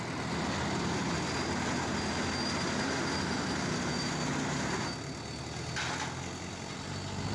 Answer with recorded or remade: recorded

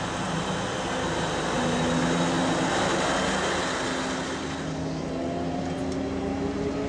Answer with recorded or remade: recorded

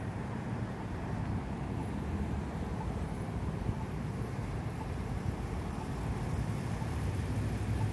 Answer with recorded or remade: remade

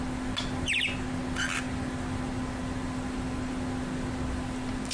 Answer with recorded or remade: recorded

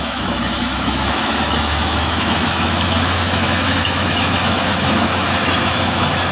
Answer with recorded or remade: remade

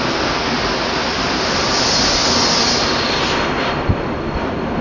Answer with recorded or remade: recorded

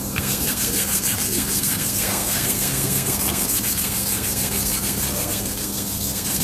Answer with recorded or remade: remade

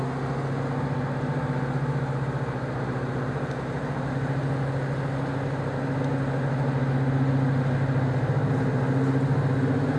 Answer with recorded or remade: recorded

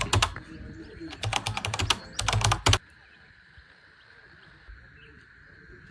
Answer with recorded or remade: recorded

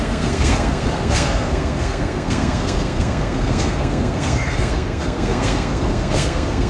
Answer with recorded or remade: remade